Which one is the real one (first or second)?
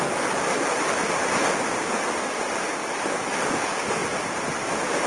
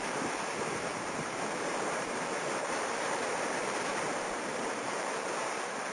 first